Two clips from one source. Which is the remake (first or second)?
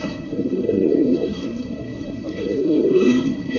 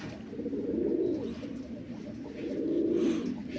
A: first